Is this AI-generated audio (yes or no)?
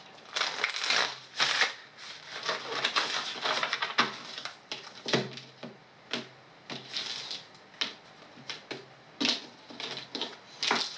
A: no